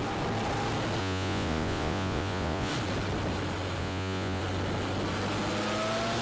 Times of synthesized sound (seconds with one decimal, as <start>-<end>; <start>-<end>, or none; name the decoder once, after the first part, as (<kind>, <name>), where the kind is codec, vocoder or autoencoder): 1.0-2.7 (vocoder, Vocos); 3.8-4.4